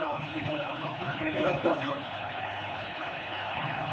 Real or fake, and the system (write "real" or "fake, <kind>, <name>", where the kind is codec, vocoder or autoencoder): fake, codec, HILCodec